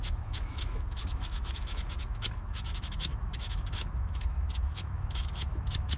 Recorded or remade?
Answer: remade